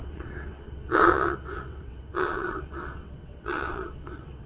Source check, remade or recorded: remade